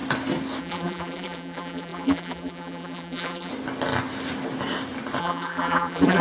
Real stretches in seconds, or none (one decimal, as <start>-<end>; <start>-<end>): 0.0-0.6; 3.5-5.2